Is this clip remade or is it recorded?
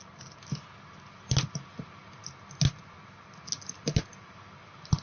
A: recorded